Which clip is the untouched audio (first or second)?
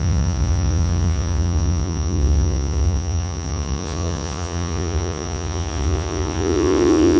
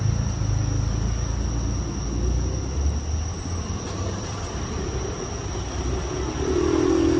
second